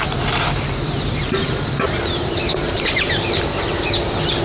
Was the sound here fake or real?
real